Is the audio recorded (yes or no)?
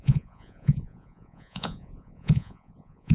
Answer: no